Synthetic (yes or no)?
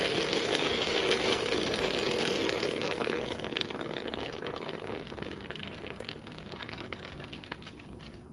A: yes